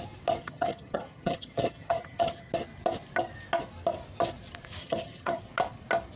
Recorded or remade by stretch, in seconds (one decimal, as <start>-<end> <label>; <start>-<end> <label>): 0.0-0.4 recorded; 0.4-2.5 remade; 2.5-4.8 recorded; 4.8-5.4 remade; 5.4-6.2 recorded